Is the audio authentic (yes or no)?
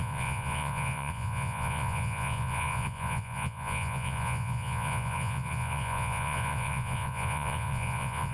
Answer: no